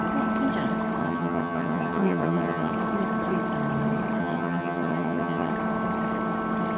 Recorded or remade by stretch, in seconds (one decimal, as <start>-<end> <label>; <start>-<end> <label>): 0.0-1.0 recorded; 1.0-2.7 remade; 2.7-4.2 recorded; 4.2-5.5 remade; 5.5-6.8 recorded